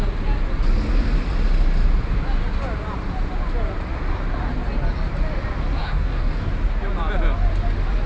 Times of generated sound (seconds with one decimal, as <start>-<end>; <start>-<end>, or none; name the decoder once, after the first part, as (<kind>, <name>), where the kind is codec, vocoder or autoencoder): 5.8-6.5 (codec, DAC)